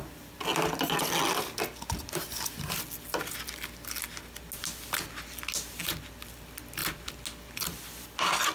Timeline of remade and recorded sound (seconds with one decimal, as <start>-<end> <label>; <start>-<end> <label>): 0.0-8.5 recorded